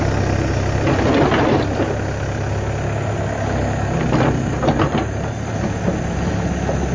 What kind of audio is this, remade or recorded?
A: recorded